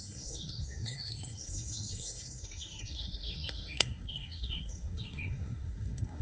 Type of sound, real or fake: fake